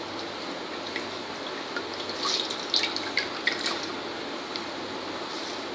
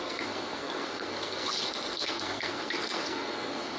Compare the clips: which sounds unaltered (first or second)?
first